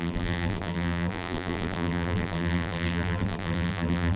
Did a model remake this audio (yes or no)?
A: yes